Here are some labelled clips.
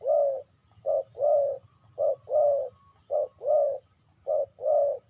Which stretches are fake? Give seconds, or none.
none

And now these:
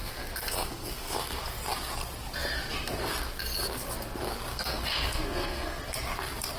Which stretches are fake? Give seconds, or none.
0.0-1.4; 4.5-5.8

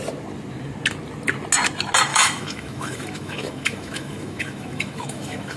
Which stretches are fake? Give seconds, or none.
2.1-5.6

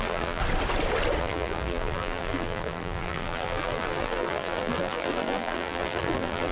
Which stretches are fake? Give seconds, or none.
0.0-0.4; 1.2-6.5

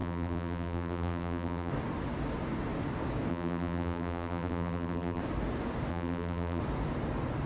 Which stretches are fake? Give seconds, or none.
0.0-1.7; 3.3-5.2; 5.9-6.6

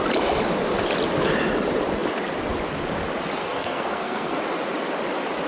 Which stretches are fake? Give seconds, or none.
3.4-4.4

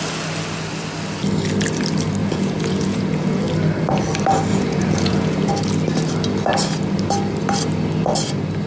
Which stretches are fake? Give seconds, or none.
2.2-3.4; 4.5-5.5